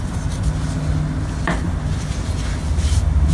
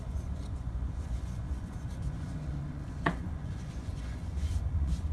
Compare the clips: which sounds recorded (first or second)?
first